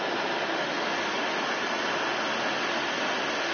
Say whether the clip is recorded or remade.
recorded